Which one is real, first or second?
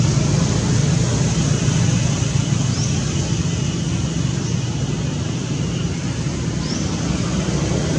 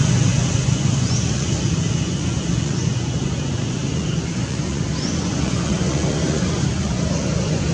first